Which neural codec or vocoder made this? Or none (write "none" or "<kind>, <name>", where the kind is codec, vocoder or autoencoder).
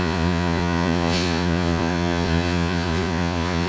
vocoder, Vocos